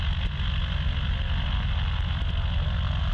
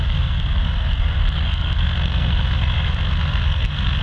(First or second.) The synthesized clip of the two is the second